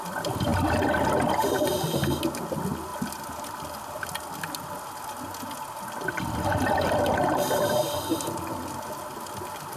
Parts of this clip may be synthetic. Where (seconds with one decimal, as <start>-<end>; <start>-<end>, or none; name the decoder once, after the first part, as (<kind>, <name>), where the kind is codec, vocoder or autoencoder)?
none